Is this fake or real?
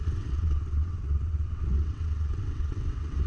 fake